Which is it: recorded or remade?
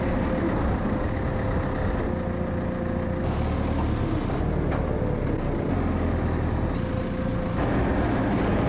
recorded